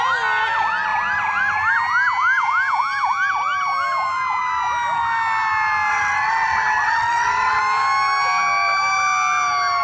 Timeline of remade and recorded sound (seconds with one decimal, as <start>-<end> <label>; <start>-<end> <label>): 0.0-5.9 recorded; 5.9-7.6 remade; 7.6-9.8 recorded